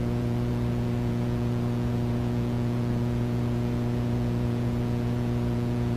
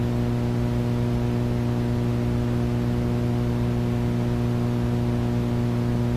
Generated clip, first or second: first